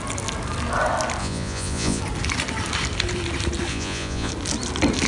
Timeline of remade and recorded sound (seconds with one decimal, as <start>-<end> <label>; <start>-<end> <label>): 0.0-1.2 recorded; 1.2-2.0 remade; 2.0-3.7 recorded; 3.7-4.3 remade; 4.3-5.1 recorded